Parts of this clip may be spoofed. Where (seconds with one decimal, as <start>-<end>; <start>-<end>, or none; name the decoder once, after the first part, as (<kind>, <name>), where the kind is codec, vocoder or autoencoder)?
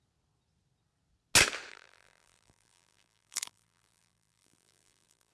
1.7-5.3 (vocoder, BigVGAN v2)